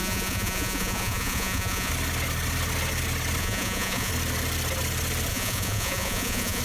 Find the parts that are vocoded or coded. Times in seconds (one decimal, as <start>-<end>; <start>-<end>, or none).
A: 0.0-1.9; 3.4-4.1; 5.3-6.6